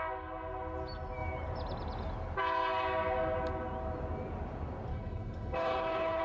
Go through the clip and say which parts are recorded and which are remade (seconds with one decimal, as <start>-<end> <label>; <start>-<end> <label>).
0.0-4.9 recorded; 4.9-6.2 remade